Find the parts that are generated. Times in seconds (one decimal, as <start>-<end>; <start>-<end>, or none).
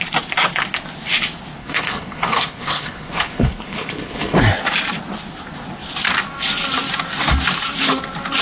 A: 1.6-4.4